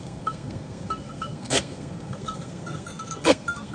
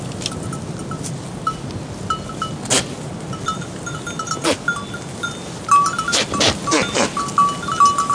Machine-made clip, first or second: first